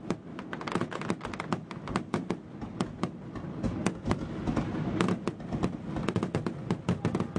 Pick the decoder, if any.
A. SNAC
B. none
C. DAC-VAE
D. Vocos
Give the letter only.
B